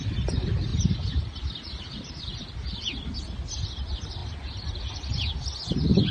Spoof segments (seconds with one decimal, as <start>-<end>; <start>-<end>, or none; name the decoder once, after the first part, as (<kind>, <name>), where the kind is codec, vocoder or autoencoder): 0.7-1.7 (vocoder, BigVGAN v2)